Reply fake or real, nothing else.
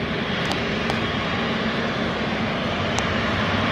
fake